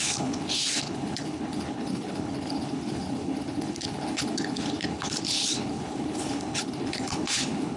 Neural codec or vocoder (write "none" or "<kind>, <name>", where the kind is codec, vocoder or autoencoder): codec, HILCodec